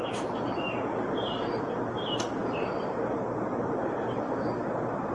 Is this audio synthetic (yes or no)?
no